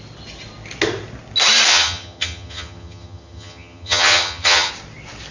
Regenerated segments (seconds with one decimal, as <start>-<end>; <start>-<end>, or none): 1.7-4.7